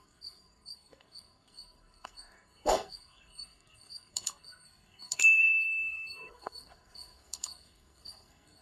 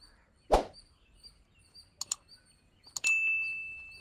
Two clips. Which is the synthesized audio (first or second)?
first